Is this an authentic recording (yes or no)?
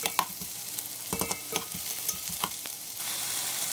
no